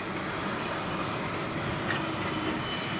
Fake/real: real